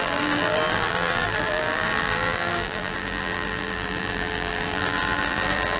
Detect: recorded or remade remade